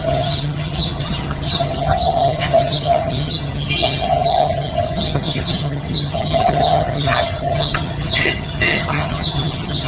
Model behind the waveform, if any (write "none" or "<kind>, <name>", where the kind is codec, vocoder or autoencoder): vocoder, HiFi-GAN